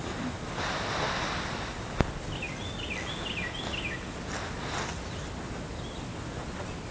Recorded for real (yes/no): yes